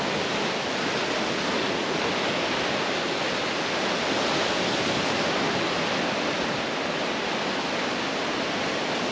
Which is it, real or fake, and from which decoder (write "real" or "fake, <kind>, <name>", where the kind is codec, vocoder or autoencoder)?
real